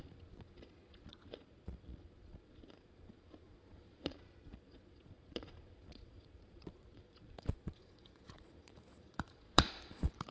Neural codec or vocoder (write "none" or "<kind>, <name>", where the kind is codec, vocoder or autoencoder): vocoder, Vocos